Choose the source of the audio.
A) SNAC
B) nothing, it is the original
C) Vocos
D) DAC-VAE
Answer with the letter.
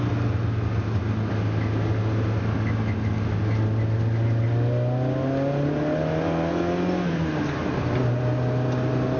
B